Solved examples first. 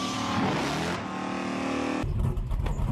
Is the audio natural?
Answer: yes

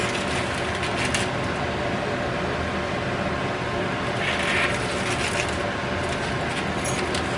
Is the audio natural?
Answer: yes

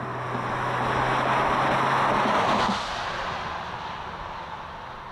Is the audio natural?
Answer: yes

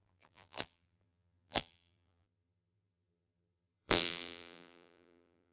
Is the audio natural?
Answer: no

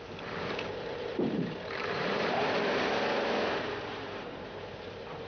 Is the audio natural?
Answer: no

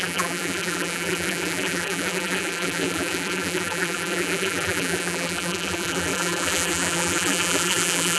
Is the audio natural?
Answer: no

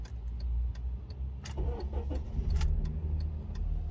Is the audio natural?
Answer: yes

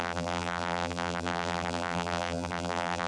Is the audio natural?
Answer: no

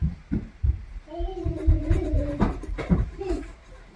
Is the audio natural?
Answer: no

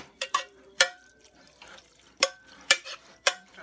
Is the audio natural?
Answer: no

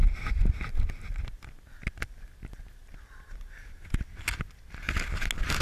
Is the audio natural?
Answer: yes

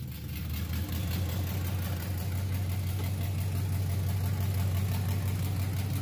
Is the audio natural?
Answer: yes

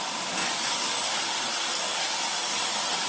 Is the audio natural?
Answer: no